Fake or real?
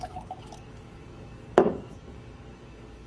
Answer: fake